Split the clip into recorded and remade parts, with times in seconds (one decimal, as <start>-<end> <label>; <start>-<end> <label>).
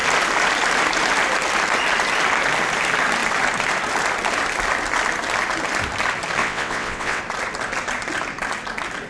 0.0-6.4 recorded; 6.4-7.2 remade; 7.2-9.1 recorded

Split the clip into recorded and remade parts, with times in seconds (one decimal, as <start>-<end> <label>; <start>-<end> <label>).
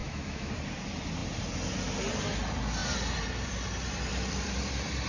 0.0-0.5 remade; 0.5-5.1 recorded